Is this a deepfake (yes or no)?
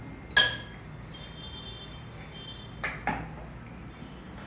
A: no